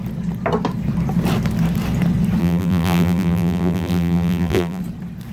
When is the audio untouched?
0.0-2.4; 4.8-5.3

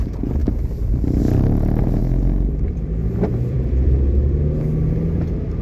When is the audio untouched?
0.0-2.0; 4.4-5.6

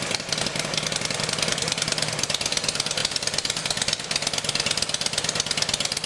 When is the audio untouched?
0.0-6.1